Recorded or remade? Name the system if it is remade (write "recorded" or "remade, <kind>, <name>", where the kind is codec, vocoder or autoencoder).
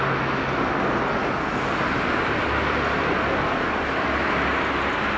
recorded